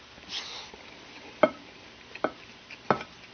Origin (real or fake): real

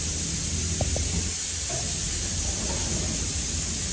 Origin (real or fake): real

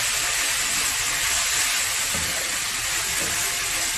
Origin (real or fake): real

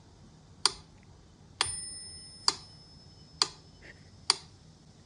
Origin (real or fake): real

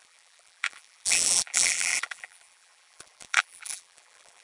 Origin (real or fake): fake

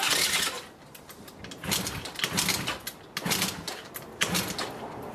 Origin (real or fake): real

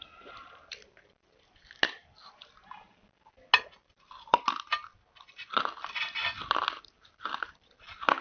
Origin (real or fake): real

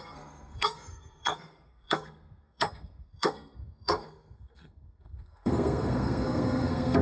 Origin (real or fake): fake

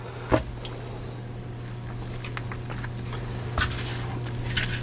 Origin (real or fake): real